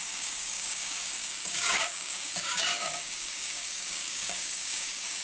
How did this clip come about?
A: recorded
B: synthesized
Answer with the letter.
B